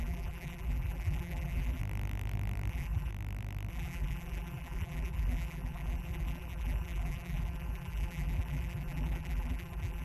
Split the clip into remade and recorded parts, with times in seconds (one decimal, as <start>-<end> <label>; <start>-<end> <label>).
0.0-1.8 remade; 1.8-2.7 recorded; 2.7-3.1 remade; 3.1-3.7 recorded; 3.7-10.0 remade